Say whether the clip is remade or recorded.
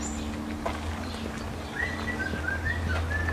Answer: recorded